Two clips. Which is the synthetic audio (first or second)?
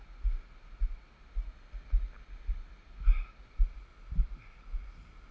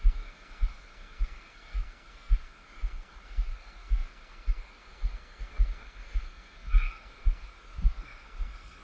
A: second